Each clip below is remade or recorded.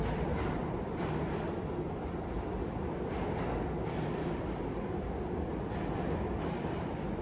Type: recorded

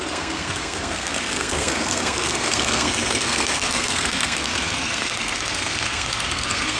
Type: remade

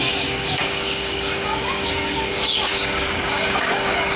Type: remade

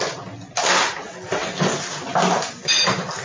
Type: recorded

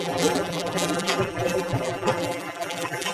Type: remade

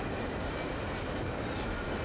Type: remade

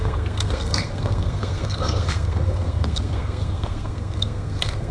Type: remade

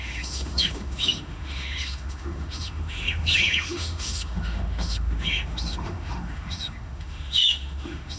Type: remade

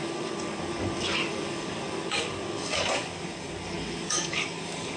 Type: remade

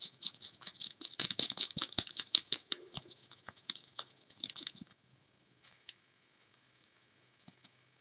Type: remade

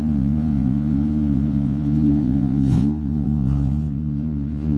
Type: remade